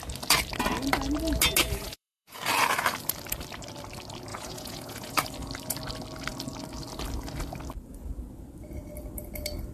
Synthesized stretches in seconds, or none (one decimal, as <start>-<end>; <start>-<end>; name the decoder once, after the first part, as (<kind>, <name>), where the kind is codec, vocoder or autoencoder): 1.6-2.4 (vocoder, Vocos); 4.3-5.2